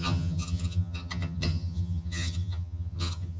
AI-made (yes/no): yes